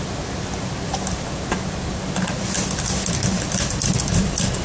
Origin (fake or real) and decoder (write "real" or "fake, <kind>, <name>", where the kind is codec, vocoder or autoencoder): fake, vocoder, BigVGAN v2